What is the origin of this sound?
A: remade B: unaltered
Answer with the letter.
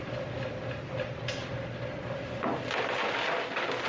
B